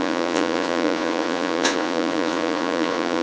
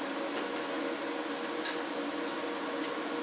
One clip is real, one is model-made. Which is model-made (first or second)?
first